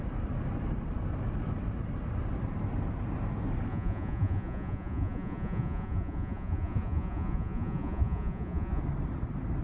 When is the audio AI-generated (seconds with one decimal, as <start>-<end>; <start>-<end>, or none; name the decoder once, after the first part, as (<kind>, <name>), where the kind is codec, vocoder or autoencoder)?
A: 3.7-8.8 (vocoder, Vocos)